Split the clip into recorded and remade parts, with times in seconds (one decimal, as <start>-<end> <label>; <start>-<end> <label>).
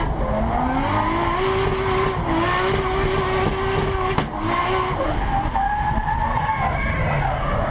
0.0-7.7 recorded